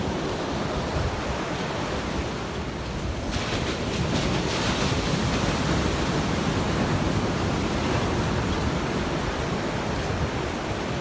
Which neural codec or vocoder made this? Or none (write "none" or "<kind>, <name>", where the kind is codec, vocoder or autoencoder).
none